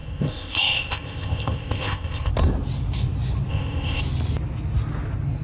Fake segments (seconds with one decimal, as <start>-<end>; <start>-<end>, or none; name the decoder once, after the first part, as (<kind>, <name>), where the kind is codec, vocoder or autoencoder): 0.0-2.3 (codec, ZipCodec); 3.5-4.0